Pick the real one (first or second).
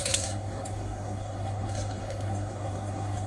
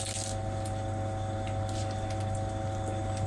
second